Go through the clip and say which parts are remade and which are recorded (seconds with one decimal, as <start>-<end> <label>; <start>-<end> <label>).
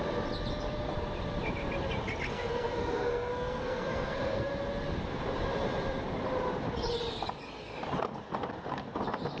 0.0-2.3 recorded; 2.3-4.5 remade; 4.5-9.4 recorded